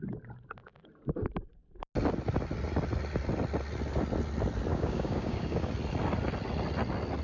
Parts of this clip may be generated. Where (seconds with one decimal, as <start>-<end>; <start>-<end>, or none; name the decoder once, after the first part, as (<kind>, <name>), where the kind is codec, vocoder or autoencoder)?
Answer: 4.7-5.7 (codec, DAC)